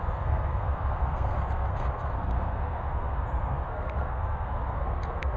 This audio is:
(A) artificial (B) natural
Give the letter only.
A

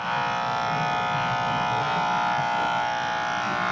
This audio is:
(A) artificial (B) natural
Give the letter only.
B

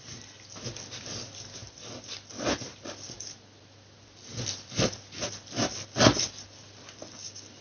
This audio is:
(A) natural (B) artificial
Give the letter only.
A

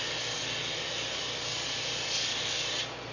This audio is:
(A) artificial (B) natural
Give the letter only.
B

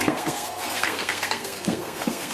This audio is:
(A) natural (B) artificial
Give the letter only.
B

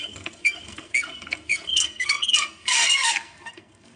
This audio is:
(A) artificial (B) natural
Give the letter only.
A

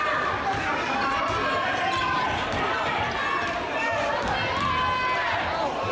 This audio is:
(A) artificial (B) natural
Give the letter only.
B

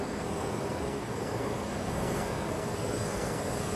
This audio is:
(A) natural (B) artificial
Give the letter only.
B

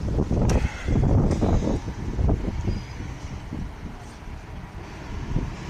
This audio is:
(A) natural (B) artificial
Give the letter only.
A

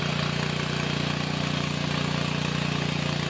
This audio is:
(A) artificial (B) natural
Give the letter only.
B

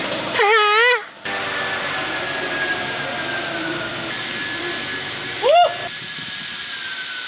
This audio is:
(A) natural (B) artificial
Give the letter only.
A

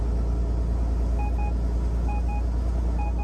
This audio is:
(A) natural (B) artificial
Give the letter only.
A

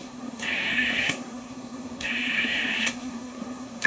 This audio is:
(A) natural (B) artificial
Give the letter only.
B